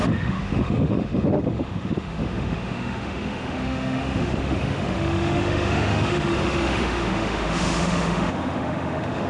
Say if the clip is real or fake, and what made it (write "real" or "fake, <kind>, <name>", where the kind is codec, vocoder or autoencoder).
fake, autoencoder, DAC-VAE